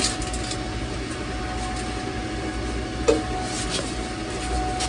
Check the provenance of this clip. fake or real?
real